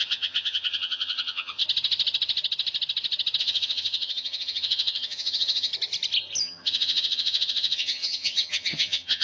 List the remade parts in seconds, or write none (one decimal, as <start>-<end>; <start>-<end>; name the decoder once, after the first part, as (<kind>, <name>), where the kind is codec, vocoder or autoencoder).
0.0-1.6 (vocoder, HiFi-GAN); 3.4-5.7; 6.4-9.2